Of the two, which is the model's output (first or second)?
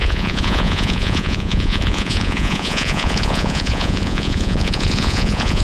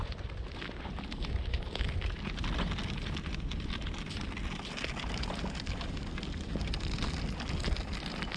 first